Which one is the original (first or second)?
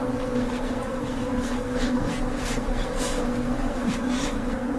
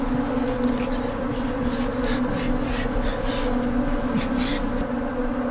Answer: second